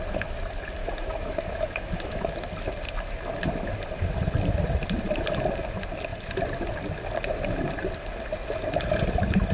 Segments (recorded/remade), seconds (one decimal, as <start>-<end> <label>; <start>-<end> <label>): 0.0-0.8 recorded; 0.8-2.3 remade; 2.3-9.5 recorded